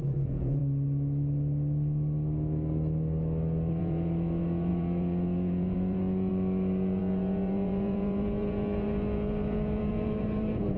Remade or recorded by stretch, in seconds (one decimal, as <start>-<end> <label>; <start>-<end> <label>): 0.0-0.6 remade; 0.6-3.8 recorded; 3.8-10.8 remade